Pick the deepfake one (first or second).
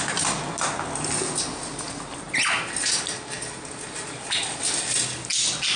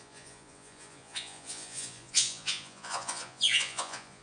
second